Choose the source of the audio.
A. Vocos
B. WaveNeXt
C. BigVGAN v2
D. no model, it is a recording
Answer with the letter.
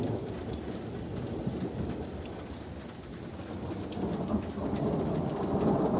D